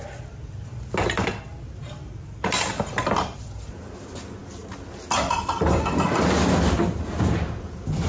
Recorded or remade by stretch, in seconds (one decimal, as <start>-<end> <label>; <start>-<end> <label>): 0.0-8.1 recorded